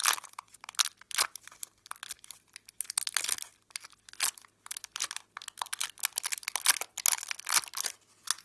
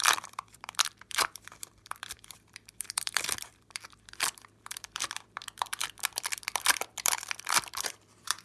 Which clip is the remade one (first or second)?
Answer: second